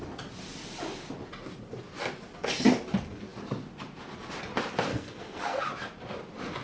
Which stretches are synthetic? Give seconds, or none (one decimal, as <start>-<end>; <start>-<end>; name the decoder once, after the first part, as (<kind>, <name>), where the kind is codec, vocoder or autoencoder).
4.9-5.6 (codec, SNAC)